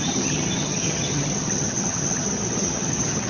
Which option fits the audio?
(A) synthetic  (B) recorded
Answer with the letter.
A